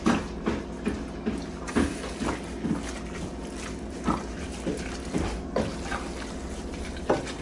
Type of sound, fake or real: real